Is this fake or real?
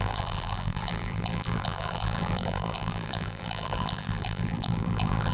fake